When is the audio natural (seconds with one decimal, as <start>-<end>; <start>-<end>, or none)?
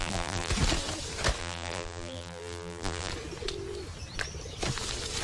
0.5-1.4; 3.1-5.2